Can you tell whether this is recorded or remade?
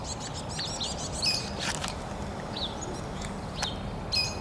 recorded